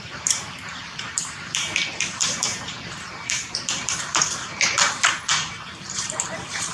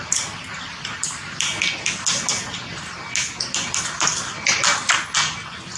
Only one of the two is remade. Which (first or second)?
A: first